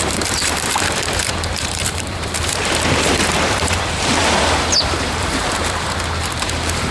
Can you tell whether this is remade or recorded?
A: remade